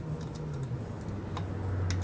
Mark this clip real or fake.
real